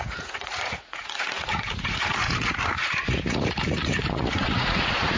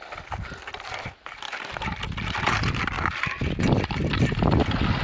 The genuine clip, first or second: second